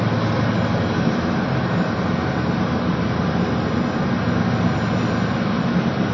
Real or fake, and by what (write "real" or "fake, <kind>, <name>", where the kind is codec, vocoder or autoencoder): real